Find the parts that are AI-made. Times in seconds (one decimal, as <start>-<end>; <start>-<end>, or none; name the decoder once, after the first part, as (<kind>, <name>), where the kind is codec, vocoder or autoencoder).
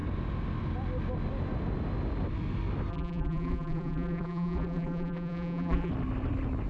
2.9-5.9 (vocoder, BigVGAN v2)